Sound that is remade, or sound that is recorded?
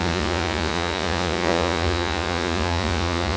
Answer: remade